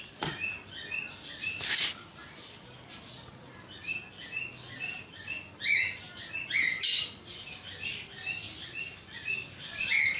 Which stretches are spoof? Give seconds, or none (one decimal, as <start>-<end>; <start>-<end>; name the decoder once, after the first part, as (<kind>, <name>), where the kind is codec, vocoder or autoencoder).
none